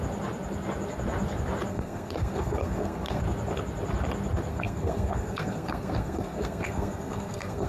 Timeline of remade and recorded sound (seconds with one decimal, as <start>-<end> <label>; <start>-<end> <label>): 0.0-1.7 recorded; 1.7-3.2 remade; 3.2-4.5 recorded; 4.5-7.7 remade